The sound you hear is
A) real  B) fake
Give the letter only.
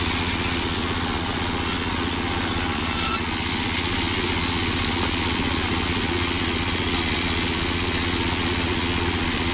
B